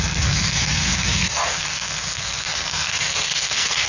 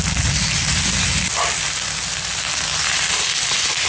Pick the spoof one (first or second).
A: first